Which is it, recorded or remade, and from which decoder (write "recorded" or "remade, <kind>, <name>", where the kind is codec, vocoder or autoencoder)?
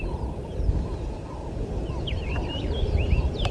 recorded